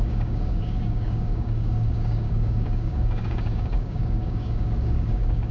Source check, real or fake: fake